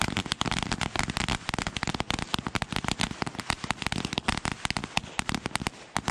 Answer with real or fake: real